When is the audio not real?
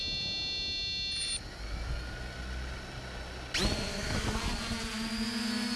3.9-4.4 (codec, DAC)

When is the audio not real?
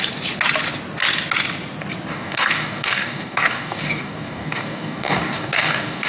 2.1-6.1 (codec, DAC)